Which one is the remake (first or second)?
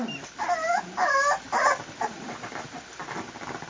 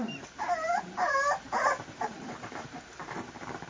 second